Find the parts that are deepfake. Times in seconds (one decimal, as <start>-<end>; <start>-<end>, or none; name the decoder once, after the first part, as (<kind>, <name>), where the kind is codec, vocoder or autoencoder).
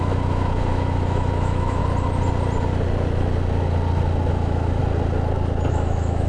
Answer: 0.0-1.8 (autoencoder, DAC-VAE); 4.3-4.8; 5.7-6.3